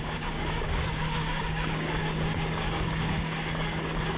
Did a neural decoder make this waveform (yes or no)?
yes